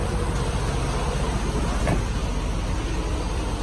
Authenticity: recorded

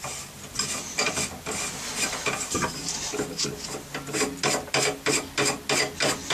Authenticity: recorded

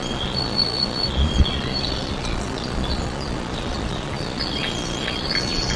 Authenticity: remade